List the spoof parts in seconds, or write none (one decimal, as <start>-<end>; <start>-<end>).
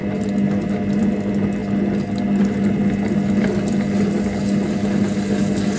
none